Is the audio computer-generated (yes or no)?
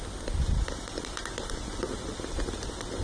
no